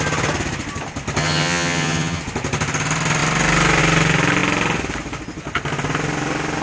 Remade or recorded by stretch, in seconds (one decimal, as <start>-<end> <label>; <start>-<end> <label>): 0.0-1.2 recorded; 1.2-2.2 remade; 2.2-6.6 recorded